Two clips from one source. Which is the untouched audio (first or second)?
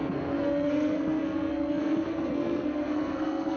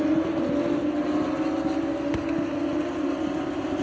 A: second